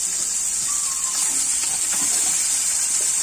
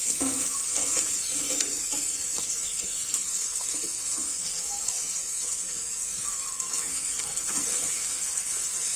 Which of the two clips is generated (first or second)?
second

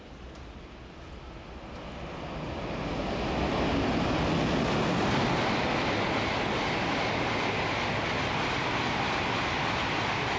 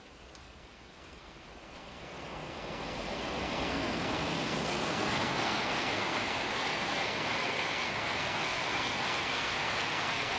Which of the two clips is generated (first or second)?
second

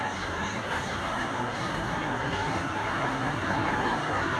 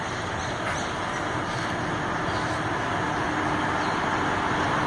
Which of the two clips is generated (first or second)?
first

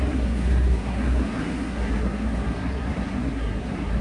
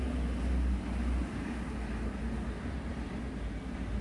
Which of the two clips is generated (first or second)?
first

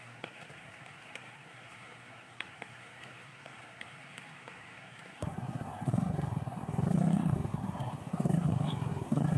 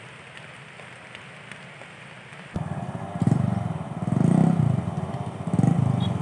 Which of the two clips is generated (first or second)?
first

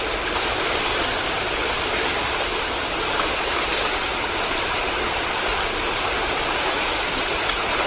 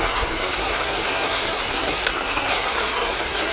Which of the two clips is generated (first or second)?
second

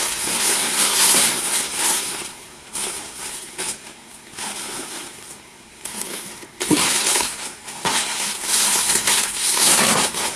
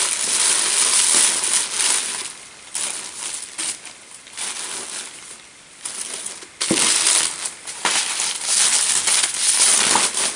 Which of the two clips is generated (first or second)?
first